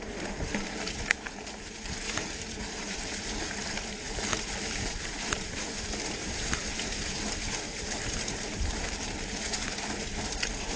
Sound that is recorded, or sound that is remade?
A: remade